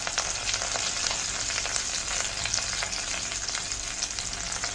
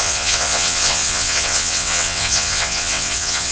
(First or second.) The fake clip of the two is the second